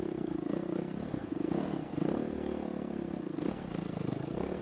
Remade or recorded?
remade